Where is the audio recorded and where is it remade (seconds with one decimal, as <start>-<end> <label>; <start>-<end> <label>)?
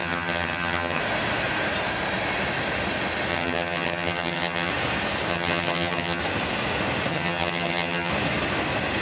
0.0-1.0 remade; 1.0-3.3 recorded; 3.3-4.7 remade; 4.7-5.3 recorded; 5.3-6.2 remade; 6.2-7.1 recorded; 7.1-8.1 remade; 8.1-9.0 recorded